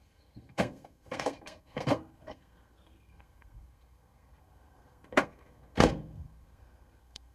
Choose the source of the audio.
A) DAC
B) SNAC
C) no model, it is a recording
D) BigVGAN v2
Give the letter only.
B